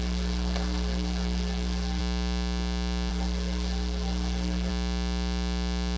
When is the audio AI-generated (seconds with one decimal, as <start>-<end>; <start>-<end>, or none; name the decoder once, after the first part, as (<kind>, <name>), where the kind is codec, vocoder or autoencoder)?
0.0-2.0 (codec, SNAC); 3.1-4.7